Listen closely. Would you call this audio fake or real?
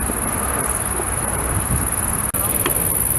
real